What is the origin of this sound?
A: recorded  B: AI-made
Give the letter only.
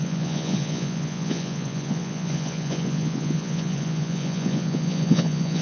B